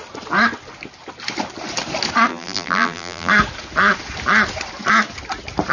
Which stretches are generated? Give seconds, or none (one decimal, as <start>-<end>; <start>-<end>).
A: 2.3-3.3